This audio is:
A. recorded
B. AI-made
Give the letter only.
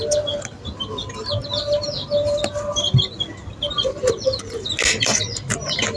A